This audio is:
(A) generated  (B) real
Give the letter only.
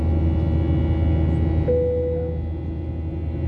B